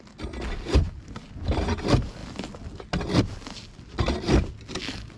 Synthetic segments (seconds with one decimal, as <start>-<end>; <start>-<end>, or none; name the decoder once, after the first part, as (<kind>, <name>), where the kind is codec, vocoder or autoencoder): none